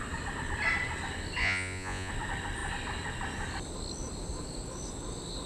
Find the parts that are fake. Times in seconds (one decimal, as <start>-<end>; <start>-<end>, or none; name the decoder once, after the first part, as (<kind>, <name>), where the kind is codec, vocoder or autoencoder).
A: 1.4-2.1 (vocoder, Vocos)